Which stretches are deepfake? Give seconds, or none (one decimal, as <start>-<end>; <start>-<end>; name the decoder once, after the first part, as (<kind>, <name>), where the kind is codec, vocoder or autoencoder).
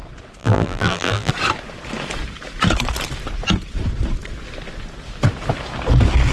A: 0.4-1.3 (vocoder, BigVGAN v2)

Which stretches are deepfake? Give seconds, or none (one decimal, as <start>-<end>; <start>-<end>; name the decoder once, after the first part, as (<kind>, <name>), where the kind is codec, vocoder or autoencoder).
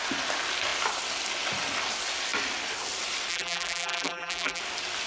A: 3.3-4.6 (vocoder, BigVGAN v2)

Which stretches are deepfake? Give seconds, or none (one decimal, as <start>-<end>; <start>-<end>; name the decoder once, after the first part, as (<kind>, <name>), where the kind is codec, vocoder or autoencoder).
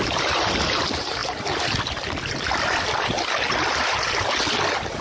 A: 1.2-4.2 (vocoder, BigVGAN v2)